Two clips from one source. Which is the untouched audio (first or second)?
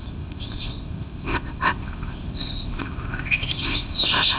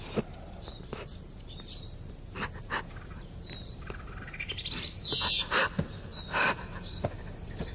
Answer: second